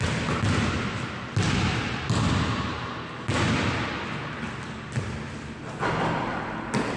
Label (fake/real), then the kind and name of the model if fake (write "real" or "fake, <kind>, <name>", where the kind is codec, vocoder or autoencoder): real